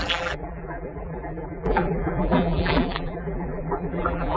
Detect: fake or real fake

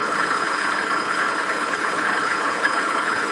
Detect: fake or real fake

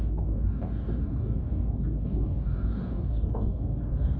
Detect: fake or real fake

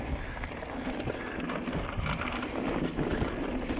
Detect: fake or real real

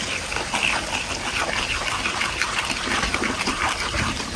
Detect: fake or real fake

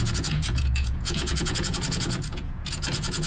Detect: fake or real fake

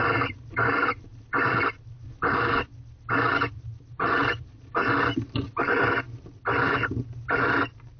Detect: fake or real real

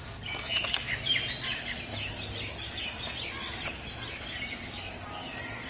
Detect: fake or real real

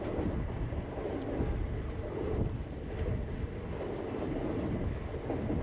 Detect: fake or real real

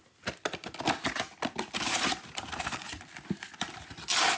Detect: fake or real real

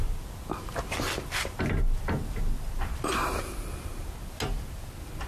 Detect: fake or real real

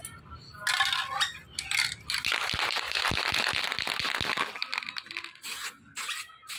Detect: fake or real real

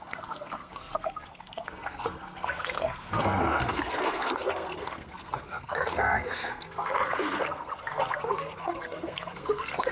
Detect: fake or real fake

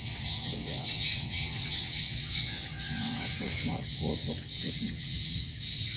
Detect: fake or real fake